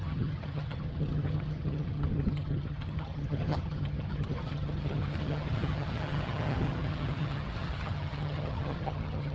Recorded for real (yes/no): no